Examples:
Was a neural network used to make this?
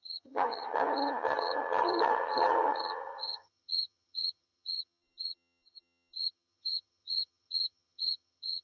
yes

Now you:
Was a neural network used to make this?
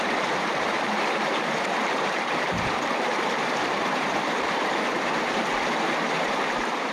yes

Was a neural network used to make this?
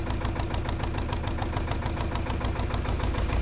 no